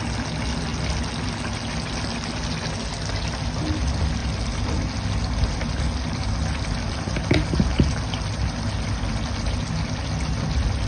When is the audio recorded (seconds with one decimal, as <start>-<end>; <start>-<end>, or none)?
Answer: 0.0-10.9